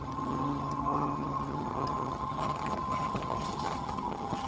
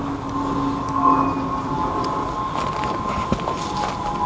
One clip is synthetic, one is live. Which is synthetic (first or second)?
first